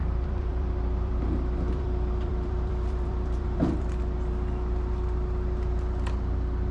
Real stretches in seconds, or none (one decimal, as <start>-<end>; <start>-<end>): 4.0-6.7

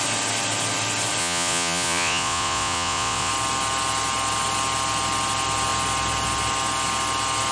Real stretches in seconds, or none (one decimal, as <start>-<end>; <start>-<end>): 0.0-1.2; 3.3-7.5

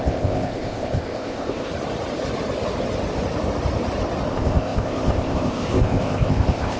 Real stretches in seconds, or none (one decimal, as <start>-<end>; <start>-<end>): 1.7-4.3

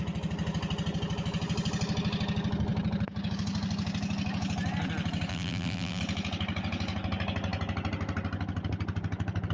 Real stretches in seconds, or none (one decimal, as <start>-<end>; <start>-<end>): 0.0-5.3; 6.0-9.5

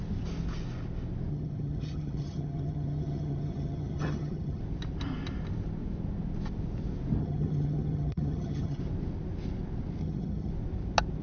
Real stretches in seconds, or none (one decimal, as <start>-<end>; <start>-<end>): 0.0-1.3; 4.6-7.2; 8.8-10.0; 10.5-11.2

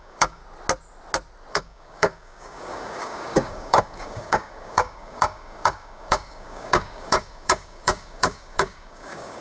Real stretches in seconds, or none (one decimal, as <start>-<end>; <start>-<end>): 0.4-1.5